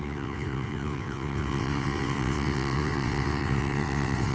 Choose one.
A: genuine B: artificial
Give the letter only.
B